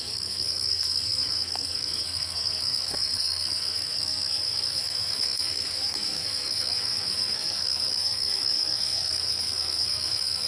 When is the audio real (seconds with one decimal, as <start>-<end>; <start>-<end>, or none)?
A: none